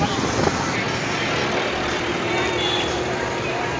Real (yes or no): yes